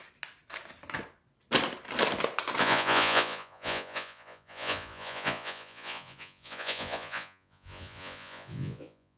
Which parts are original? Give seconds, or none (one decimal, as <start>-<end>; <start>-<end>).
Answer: 0.0-2.6